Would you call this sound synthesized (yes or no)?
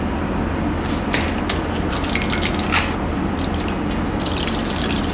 no